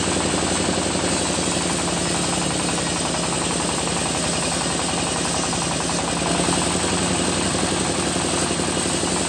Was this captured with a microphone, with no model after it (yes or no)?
yes